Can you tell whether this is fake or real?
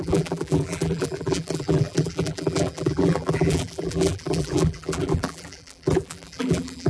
fake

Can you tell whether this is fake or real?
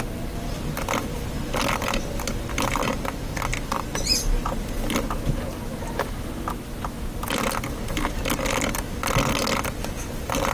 real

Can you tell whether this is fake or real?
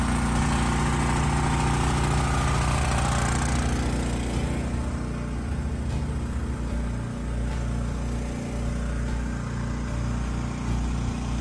real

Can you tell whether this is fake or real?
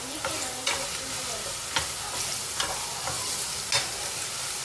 real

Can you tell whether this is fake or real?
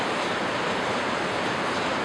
fake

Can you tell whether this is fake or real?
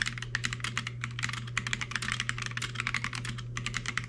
real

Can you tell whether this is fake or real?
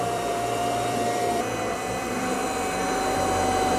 fake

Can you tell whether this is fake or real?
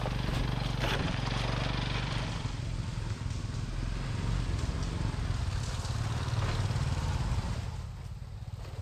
real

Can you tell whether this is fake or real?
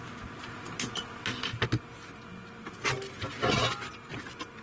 real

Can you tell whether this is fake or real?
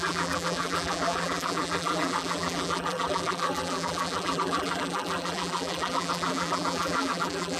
fake